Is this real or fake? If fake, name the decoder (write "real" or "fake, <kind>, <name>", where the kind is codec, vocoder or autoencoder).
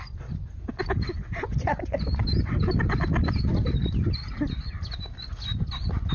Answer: real